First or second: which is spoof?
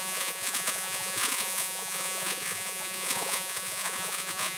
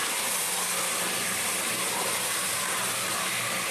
first